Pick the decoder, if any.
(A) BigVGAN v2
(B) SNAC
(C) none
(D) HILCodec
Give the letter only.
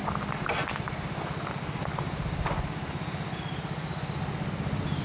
C